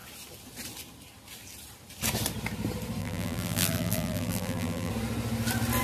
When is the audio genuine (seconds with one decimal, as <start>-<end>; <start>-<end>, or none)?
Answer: 0.0-3.0; 4.9-5.8